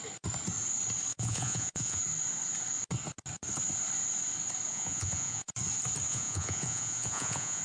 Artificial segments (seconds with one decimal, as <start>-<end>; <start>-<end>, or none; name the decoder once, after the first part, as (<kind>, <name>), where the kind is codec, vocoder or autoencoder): 1.1-2.0 (vocoder, Vocos); 4.7-5.5; 6.1-7.6